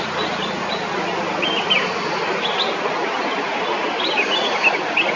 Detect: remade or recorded recorded